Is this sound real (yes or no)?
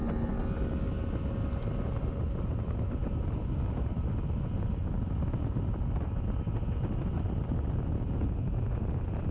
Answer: yes